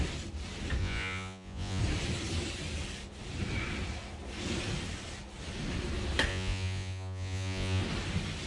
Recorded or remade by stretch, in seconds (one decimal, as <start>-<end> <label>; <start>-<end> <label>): 0.0-0.8 recorded; 0.8-1.8 remade; 1.8-6.3 recorded; 6.3-7.8 remade; 7.8-8.5 recorded